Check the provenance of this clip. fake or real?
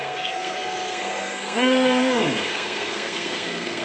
fake